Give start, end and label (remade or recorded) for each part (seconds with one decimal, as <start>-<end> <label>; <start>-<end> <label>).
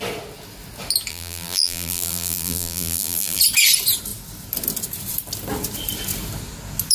0.0-1.1 recorded; 1.1-3.4 remade; 3.4-6.9 recorded